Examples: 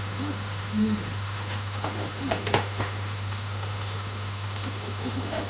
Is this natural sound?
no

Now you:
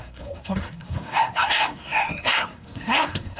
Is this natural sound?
no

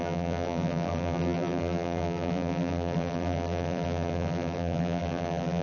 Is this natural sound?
no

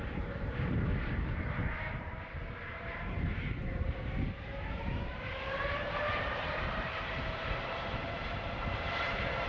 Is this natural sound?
no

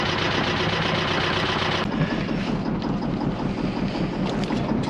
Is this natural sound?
yes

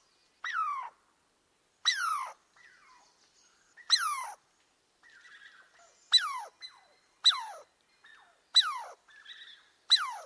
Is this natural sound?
yes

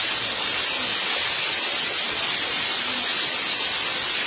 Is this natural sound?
yes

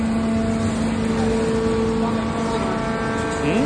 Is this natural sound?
yes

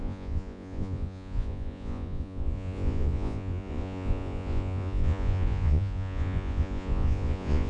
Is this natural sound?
no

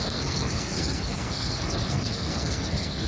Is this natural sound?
no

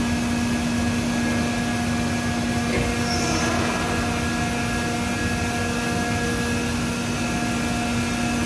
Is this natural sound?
yes